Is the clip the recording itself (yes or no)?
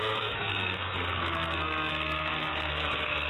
no